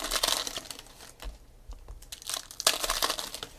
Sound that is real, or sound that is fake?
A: real